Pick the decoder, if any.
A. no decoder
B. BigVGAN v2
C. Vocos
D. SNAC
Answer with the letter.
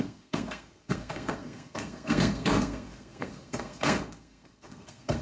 D